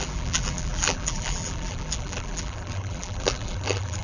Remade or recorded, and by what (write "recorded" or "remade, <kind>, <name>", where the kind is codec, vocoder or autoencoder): remade, vocoder, BigVGAN v2